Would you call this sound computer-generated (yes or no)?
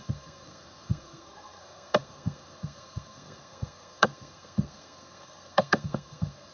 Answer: yes